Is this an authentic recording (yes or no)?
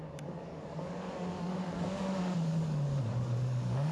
no